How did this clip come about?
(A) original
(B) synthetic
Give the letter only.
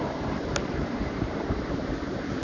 B